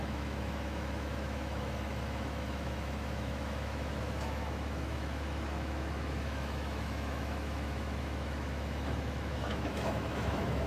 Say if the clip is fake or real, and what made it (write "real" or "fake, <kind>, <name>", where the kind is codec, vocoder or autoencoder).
fake, autoencoder, DAC-VAE